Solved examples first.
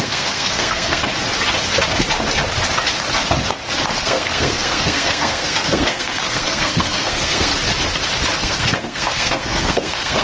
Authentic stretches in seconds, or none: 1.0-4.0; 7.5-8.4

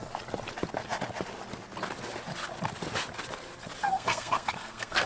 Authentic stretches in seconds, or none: 0.0-3.8

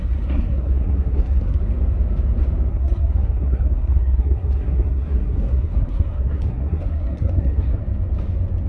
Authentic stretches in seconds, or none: 1.6-2.7; 7.8-8.7